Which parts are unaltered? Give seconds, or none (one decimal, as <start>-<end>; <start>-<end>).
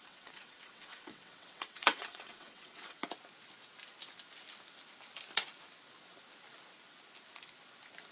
3.0-8.1